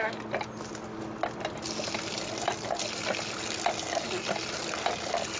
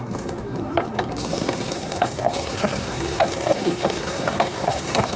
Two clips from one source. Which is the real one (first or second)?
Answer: first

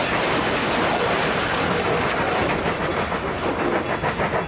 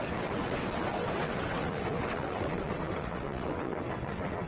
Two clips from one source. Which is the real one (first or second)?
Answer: first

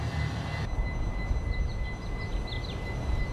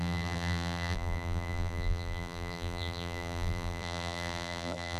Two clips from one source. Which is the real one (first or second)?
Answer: first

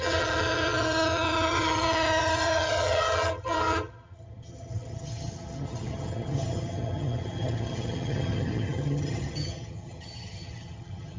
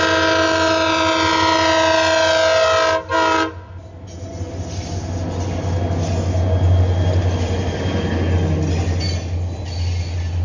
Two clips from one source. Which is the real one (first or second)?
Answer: second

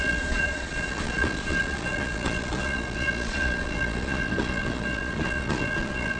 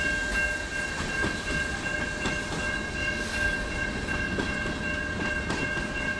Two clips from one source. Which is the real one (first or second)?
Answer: second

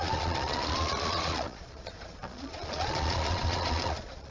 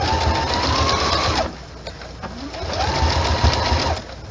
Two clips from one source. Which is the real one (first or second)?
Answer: second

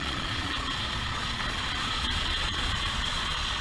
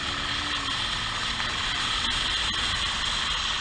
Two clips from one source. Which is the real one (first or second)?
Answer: second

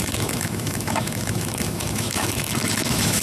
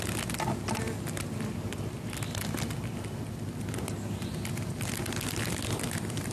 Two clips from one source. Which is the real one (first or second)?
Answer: second